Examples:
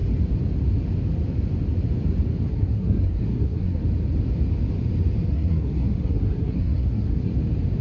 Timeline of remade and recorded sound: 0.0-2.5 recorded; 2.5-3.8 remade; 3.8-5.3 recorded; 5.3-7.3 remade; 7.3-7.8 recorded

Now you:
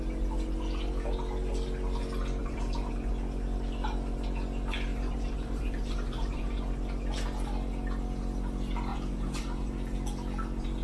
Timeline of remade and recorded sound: 0.0-2.4 recorded; 2.4-3.1 remade; 3.1-4.9 recorded; 4.9-6.6 remade; 6.6-8.9 recorded; 8.9-9.7 remade; 9.7-10.8 recorded